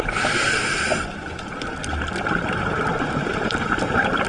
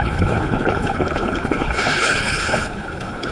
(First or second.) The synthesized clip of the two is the second